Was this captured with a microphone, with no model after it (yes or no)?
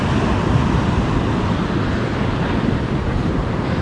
yes